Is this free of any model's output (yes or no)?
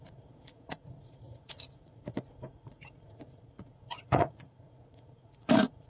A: no